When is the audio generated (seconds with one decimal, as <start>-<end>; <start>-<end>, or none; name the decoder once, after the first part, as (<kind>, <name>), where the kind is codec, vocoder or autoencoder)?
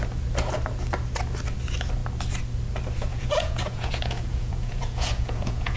3.1-5.8 (vocoder, Vocos)